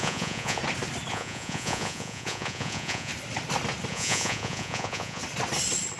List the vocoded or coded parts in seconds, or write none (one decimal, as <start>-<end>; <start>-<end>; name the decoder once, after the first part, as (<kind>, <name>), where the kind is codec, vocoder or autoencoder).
0.0-0.6 (vocoder, Vocos); 1.1-3.1; 3.9-5.2